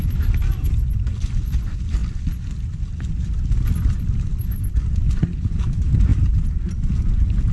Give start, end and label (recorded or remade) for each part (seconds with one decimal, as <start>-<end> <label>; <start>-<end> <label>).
0.0-7.5 recorded